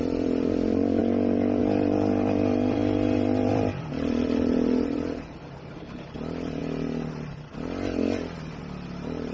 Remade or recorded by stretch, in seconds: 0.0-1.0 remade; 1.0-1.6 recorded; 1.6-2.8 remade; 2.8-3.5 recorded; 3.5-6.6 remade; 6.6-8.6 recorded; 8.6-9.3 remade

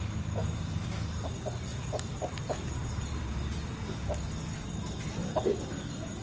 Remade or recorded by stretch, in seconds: 0.0-0.4 recorded; 0.4-0.9 remade; 0.9-1.7 recorded; 1.7-4.1 remade; 4.1-5.2 recorded; 5.2-6.2 remade

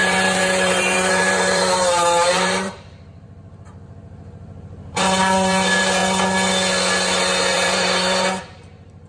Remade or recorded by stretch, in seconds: 0.0-6.0 remade; 6.0-7.5 recorded; 7.5-9.1 remade

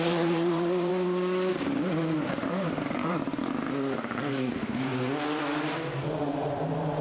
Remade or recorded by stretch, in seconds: 0.0-0.9 remade; 0.9-1.5 recorded; 1.5-3.3 remade; 3.3-4.2 recorded; 4.2-4.9 remade; 4.9-5.4 recorded; 5.4-7.0 remade